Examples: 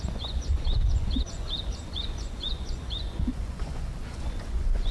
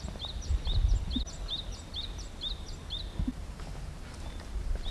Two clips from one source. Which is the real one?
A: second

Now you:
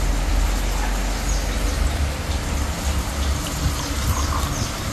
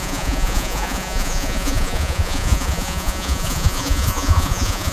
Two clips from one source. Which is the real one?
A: first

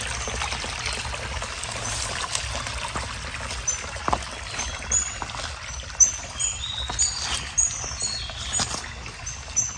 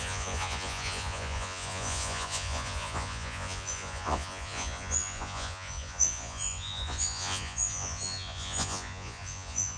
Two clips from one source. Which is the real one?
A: first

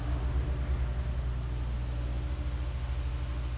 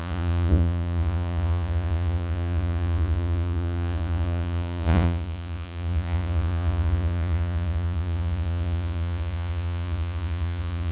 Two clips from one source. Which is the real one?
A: first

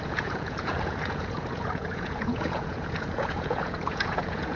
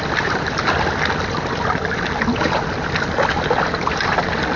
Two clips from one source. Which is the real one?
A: second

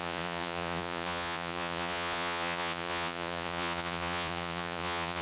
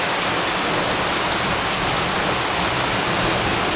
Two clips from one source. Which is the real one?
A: second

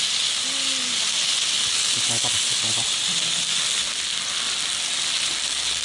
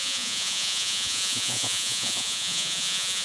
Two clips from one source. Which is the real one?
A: first